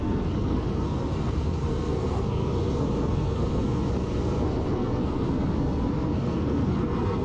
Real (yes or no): no